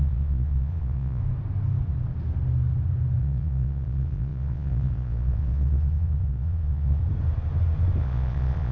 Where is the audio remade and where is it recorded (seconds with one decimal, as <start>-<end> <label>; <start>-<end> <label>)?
0.0-1.2 remade; 1.2-3.2 recorded; 3.2-7.0 remade; 7.0-8.0 recorded; 8.0-8.7 remade